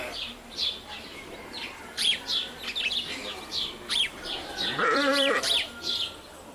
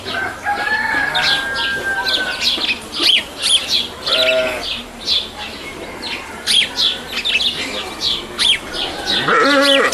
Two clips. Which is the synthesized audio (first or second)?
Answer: first